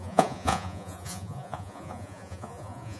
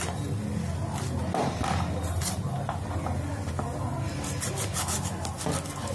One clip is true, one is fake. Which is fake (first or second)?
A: first